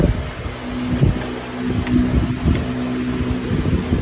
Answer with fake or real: real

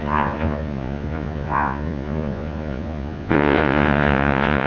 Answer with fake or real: fake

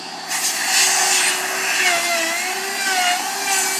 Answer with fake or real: real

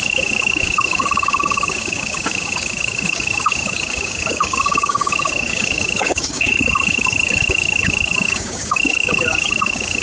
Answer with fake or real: fake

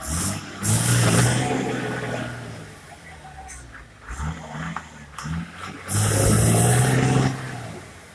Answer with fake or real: real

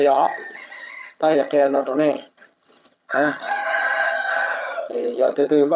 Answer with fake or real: fake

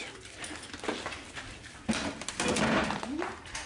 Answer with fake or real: real